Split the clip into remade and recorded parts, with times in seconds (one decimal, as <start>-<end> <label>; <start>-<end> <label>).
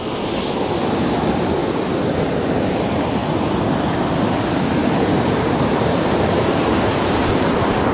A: 0.0-4.8 recorded; 4.8-7.3 remade; 7.3-7.9 recorded